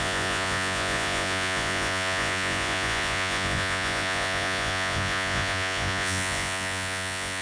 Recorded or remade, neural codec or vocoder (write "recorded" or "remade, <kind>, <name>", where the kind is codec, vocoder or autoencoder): remade, vocoder, Vocos